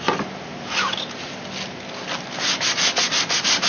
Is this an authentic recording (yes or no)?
yes